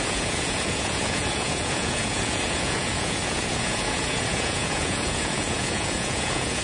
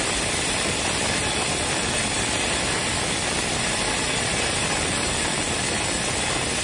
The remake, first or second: first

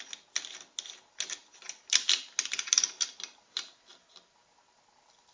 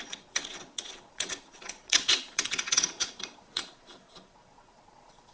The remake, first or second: second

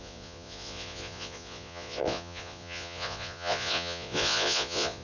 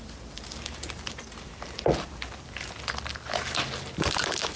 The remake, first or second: first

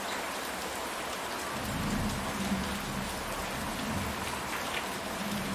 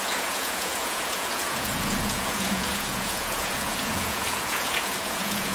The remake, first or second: second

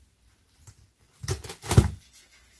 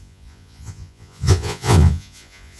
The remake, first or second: second